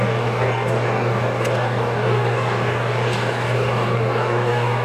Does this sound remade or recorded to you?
remade